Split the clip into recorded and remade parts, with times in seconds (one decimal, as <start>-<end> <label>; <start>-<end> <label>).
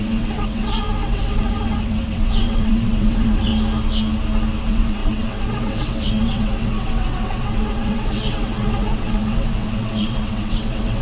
0.0-3.5 remade; 3.5-4.6 recorded; 4.6-11.0 remade